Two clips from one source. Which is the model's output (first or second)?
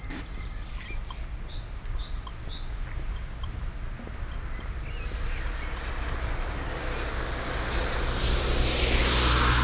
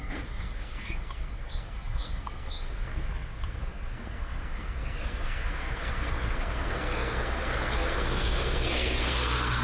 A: second